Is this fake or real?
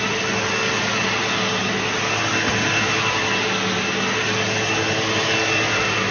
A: real